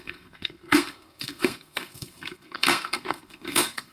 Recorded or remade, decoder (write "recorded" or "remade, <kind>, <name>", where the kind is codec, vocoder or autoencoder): remade, codec, SNAC